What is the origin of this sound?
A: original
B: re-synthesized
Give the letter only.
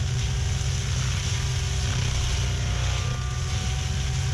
A